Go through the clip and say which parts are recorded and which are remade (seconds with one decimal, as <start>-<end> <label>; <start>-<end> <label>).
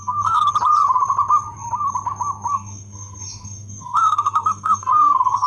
0.0-0.5 remade; 0.5-2.5 recorded; 2.5-5.5 remade